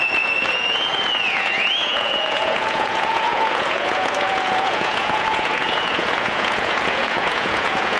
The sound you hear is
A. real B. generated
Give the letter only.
B